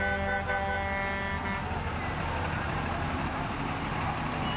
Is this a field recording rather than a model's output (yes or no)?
yes